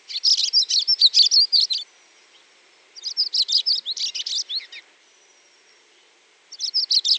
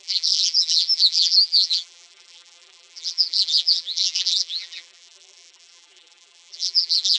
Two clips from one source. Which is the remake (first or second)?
second